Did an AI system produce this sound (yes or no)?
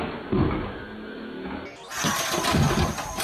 no